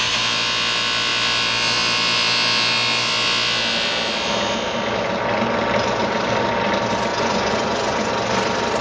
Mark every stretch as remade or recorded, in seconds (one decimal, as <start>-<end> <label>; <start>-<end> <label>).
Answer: 0.0-7.1 recorded; 7.1-8.1 remade; 8.1-8.8 recorded